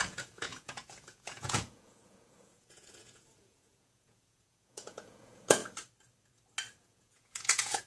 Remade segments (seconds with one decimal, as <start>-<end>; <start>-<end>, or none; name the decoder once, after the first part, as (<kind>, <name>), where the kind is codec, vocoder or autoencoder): 0.0-5.6 (vocoder, Vocos); 6.8-7.9